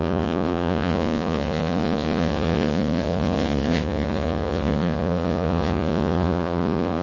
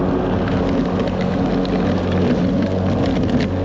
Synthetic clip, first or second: first